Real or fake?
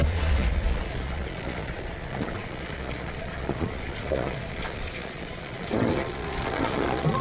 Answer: fake